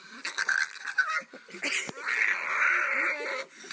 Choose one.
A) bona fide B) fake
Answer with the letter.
A